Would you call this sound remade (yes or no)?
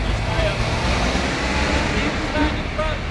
no